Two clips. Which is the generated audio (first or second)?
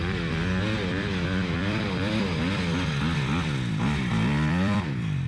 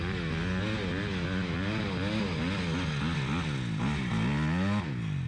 first